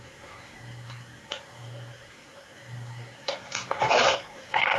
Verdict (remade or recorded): remade